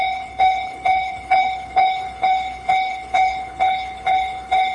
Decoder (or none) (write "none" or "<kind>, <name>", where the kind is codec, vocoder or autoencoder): codec, HILCodec